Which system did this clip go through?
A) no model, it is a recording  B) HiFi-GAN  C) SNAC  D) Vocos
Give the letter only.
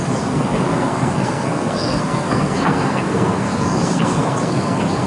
C